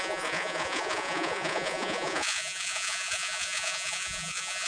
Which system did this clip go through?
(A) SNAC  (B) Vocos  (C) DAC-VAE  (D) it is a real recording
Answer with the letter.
B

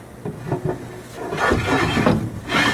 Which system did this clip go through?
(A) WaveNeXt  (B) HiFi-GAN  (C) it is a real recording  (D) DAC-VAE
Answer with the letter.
C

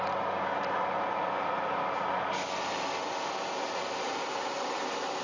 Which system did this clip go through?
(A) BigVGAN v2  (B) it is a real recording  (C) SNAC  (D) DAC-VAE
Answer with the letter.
B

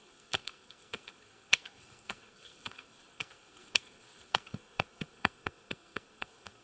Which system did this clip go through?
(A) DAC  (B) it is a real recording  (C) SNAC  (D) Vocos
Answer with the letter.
C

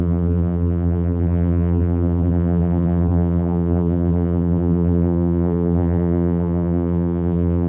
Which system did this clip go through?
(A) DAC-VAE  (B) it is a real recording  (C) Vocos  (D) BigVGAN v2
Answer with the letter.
D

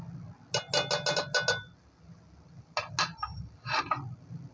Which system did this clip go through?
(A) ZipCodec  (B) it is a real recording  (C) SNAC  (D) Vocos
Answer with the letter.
B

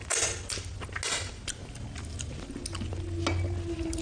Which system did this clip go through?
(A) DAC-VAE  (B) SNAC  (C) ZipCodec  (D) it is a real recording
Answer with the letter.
D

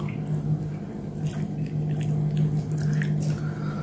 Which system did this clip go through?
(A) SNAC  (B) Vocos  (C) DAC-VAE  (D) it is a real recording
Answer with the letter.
D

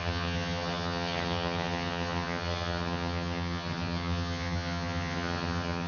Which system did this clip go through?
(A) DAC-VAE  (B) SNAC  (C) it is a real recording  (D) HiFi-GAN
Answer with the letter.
D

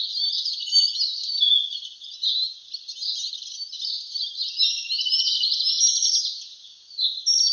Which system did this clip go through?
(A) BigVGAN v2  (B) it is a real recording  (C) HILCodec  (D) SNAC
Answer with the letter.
B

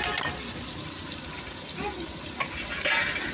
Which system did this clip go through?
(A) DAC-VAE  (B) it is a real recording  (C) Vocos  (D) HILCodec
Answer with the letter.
B